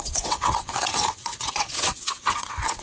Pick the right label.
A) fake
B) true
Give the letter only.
A